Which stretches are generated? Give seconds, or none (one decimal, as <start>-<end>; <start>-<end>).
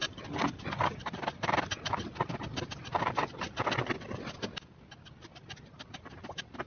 none